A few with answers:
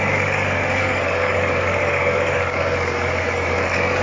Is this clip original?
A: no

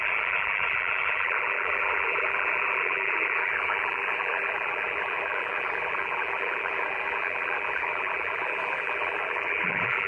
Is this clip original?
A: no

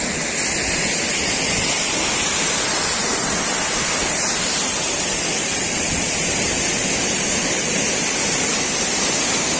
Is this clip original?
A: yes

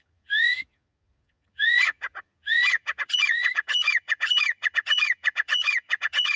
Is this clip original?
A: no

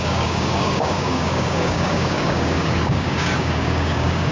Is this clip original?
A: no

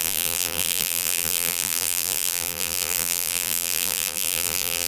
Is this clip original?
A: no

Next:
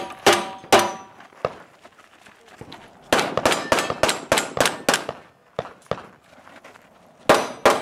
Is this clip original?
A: yes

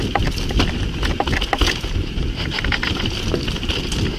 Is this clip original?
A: yes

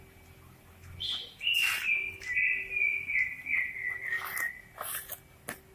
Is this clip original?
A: yes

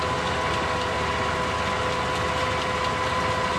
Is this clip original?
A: yes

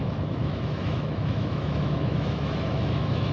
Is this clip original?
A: no